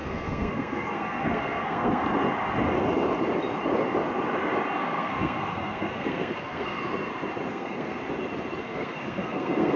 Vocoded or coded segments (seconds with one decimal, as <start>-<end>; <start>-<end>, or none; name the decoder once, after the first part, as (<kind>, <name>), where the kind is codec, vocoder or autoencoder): 0.0-2.0 (codec, SNAC); 4.8-6.8; 7.5-8.0; 8.6-9.8